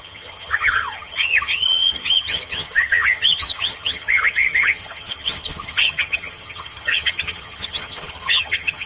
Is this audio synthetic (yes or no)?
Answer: yes